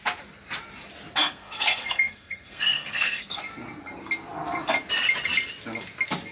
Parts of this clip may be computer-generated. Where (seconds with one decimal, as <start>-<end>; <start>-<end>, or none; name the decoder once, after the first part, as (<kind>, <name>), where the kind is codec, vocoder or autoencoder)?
1.2-3.4 (codec, SNAC)